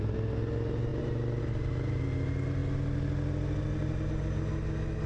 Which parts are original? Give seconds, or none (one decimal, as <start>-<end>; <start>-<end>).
0.0-5.1